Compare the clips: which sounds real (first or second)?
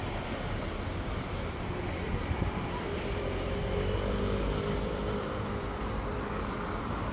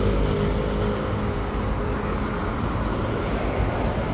second